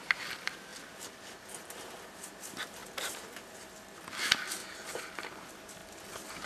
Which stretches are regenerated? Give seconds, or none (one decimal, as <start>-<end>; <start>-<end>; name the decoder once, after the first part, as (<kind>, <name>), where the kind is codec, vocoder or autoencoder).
0.0-2.8 (vocoder, BigVGAN v2); 3.9-6.5